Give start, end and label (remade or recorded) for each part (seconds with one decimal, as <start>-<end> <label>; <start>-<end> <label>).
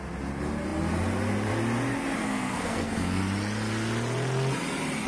0.0-2.2 recorded; 2.2-3.2 remade; 3.2-5.1 recorded